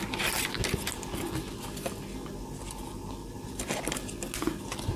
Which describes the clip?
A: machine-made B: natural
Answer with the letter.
B